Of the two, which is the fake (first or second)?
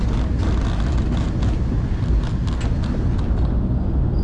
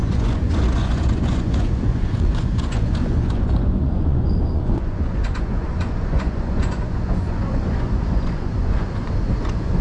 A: second